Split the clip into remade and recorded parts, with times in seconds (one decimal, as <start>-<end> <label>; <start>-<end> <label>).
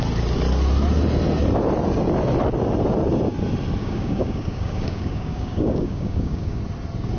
0.0-3.8 recorded; 3.8-6.6 remade; 6.6-7.2 recorded